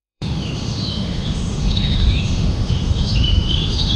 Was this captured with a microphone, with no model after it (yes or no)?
no